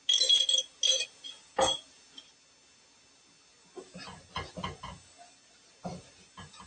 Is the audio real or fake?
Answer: real